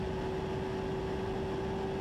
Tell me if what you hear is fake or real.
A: real